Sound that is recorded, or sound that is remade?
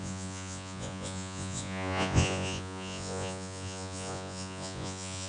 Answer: remade